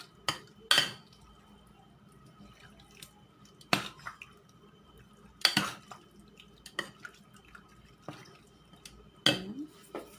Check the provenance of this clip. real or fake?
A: real